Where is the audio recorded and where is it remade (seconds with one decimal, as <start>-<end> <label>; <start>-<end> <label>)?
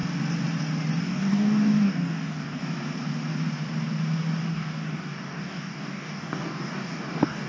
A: 0.0-1.0 recorded; 1.0-2.6 remade; 2.6-4.5 recorded; 4.5-7.5 remade